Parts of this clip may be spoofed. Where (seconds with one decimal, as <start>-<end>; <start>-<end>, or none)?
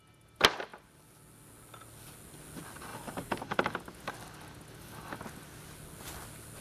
2.9-3.9